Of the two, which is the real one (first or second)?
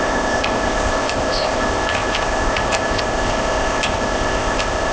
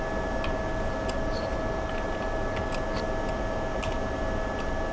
second